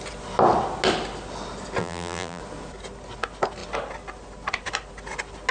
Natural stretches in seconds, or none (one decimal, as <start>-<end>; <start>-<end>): 0.0-1.8; 2.4-5.5